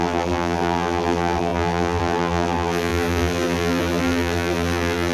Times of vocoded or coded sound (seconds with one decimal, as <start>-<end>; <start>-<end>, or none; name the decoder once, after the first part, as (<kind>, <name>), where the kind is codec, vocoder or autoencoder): 0.0-5.1 (vocoder, BigVGAN v2)